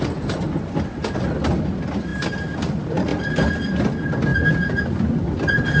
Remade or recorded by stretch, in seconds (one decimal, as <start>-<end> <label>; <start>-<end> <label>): 0.0-3.1 recorded; 3.1-3.9 remade; 3.9-4.3 recorded; 4.3-5.8 remade